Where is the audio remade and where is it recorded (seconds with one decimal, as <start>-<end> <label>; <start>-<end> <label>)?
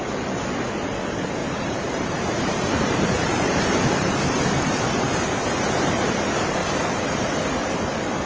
0.0-1.4 recorded; 1.4-5.9 remade; 5.9-6.6 recorded; 6.6-7.2 remade; 7.2-8.2 recorded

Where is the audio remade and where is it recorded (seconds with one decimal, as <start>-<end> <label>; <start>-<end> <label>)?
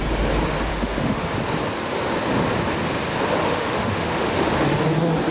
0.0-0.7 recorded; 0.7-1.3 remade; 1.3-3.4 recorded; 3.4-4.8 remade; 4.8-5.3 recorded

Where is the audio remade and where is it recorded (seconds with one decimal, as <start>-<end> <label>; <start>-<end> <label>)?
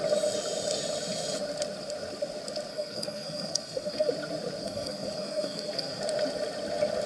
0.0-2.7 recorded; 2.7-4.1 remade; 4.1-4.6 recorded; 4.6-6.0 remade; 6.0-7.1 recorded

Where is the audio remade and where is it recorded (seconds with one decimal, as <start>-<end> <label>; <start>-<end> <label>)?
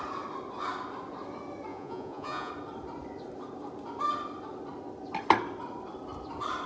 0.0-1.7 recorded; 1.7-2.5 remade; 2.5-6.7 recorded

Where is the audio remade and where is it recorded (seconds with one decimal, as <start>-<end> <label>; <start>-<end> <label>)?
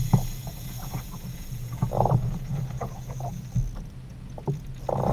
0.0-0.4 recorded; 0.4-3.5 remade; 3.5-5.1 recorded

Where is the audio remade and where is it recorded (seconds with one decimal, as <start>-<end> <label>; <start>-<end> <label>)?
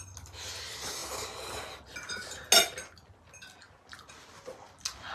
0.0-5.1 recorded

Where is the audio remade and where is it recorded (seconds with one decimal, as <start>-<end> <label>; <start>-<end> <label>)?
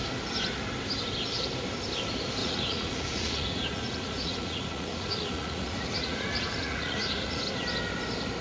0.0-2.4 recorded; 2.4-7.4 remade; 7.4-8.4 recorded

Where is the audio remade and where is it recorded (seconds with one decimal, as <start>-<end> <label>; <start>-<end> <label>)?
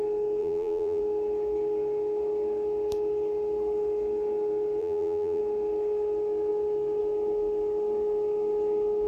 0.0-0.4 recorded; 0.4-1.0 remade; 1.0-4.8 recorded; 4.8-5.4 remade; 5.4-9.1 recorded